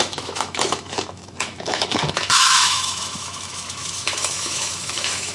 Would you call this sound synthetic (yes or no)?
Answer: yes